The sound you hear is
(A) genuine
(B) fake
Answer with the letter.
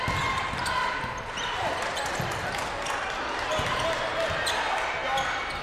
A